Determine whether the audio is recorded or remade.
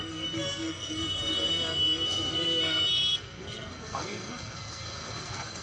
remade